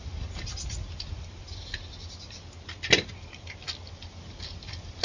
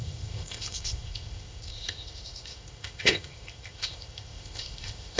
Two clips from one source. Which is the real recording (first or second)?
first